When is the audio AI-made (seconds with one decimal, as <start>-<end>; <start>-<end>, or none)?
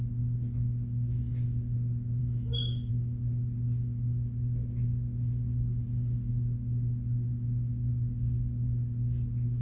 2.2-2.9